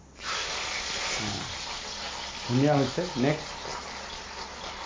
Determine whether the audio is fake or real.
real